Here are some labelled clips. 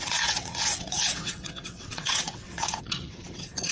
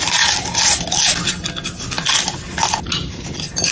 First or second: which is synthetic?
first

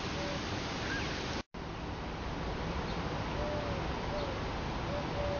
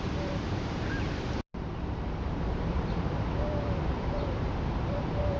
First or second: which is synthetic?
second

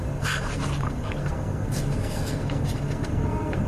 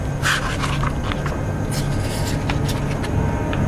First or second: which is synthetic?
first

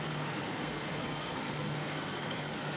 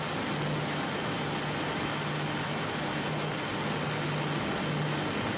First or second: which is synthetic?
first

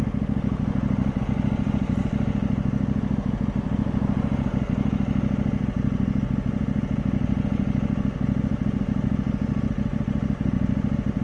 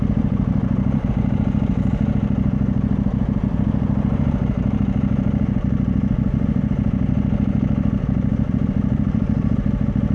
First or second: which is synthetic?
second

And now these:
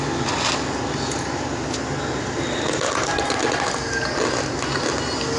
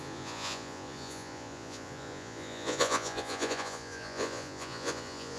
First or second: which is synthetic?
second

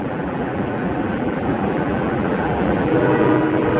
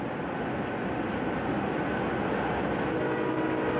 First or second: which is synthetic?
first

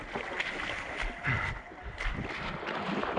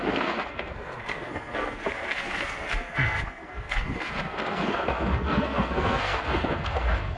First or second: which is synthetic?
second